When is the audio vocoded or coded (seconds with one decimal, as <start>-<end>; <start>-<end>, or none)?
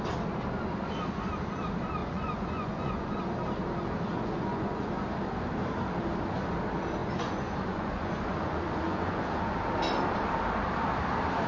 2.0-3.2; 4.1-4.9; 7.0-9.6